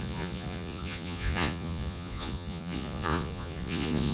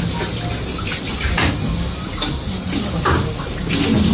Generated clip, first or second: first